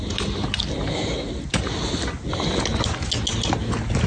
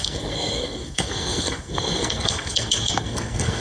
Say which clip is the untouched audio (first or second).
first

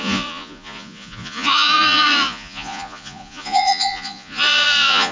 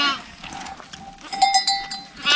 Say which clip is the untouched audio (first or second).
second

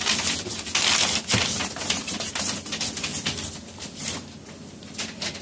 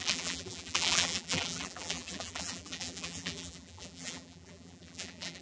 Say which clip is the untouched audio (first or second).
first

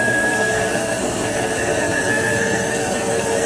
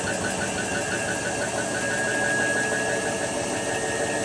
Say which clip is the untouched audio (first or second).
second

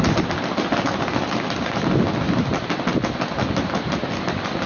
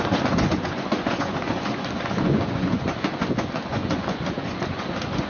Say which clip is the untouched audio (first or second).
first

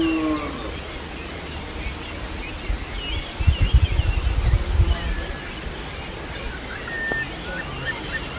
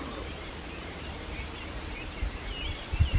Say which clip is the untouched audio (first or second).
first